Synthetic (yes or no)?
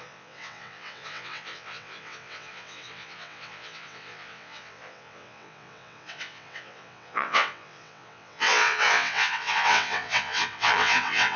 yes